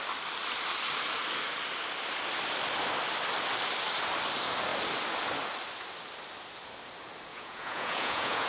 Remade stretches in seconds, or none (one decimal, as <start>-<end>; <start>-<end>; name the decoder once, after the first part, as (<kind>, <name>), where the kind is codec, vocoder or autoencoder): 7.3-8.5 (vocoder, Vocos)